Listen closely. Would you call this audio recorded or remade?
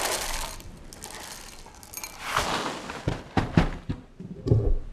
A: recorded